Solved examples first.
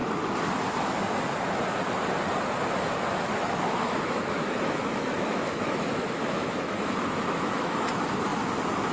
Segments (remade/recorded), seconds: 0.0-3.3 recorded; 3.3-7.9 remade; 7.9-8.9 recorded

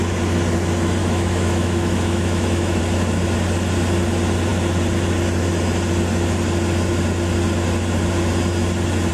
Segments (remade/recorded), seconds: 0.0-1.0 recorded; 1.0-2.8 remade; 2.8-9.1 recorded

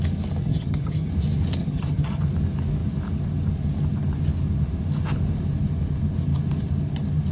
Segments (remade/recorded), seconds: 0.0-0.4 recorded; 0.4-1.1 remade; 1.1-1.6 recorded; 1.6-2.2 remade; 2.2-7.3 recorded